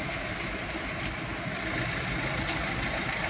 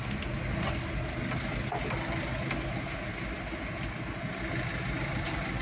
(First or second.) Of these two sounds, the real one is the second